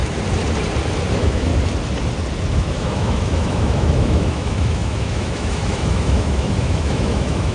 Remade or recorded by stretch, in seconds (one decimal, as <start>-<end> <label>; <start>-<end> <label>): 0.0-1.1 recorded; 1.1-1.5 remade; 1.5-2.5 recorded; 2.5-7.5 remade